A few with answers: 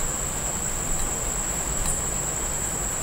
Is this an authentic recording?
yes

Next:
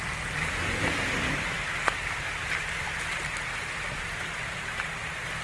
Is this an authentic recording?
yes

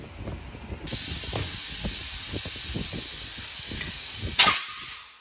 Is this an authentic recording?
yes